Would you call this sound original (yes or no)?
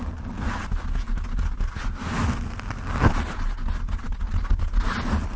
yes